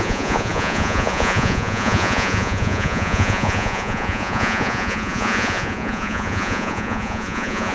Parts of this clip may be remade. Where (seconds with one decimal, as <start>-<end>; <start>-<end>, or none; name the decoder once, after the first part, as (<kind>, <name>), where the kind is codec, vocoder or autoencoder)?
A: 0.0-7.7 (vocoder, Vocos)